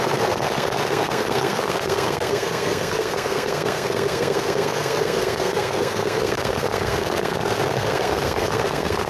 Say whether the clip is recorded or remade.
remade